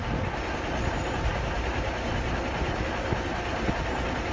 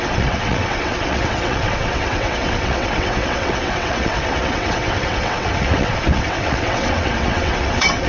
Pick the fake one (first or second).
second